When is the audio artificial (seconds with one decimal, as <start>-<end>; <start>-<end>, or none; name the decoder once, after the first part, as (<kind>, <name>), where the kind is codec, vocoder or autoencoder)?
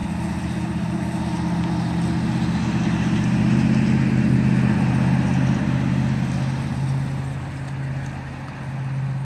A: none